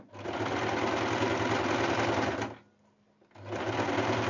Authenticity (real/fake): real